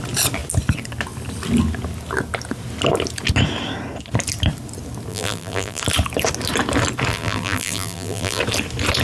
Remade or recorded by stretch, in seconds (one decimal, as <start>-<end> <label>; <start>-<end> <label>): 0.0-5.1 recorded; 5.1-5.8 remade; 5.8-7.1 recorded; 7.1-8.4 remade; 8.4-9.0 recorded